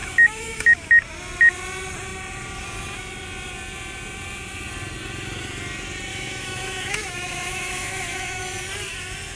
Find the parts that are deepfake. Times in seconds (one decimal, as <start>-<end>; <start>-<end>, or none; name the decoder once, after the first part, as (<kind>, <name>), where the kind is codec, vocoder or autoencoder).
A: 0.0-0.9 (autoencoder, DAC-VAE); 6.1-8.4